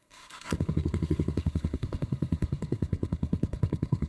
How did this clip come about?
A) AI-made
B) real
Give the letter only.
A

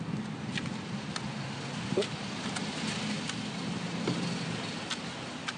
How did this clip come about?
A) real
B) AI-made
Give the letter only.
A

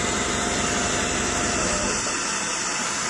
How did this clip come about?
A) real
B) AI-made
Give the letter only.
A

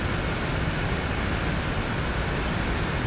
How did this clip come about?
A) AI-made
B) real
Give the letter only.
B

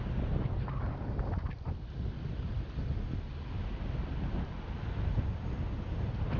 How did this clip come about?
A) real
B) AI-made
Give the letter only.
A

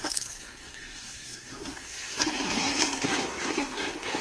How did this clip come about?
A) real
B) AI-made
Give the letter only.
B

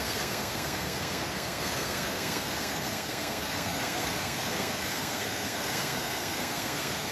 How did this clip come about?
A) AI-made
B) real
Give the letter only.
A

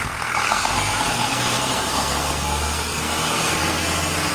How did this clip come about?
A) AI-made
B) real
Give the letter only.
A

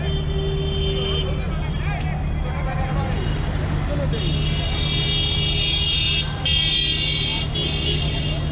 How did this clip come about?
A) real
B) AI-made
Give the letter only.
A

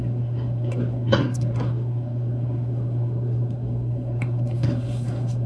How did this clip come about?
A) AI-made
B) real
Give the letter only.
A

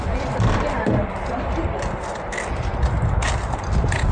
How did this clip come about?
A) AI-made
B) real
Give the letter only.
B